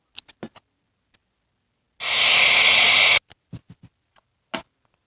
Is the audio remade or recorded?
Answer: recorded